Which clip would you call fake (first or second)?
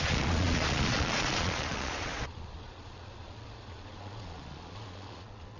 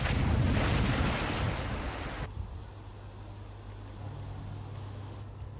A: first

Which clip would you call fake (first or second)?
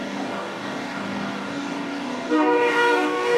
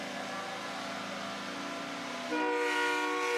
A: first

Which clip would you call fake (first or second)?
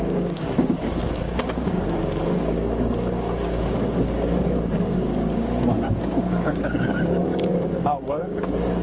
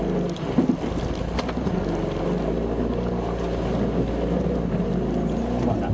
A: first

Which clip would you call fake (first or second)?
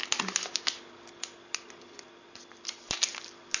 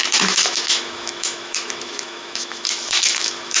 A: second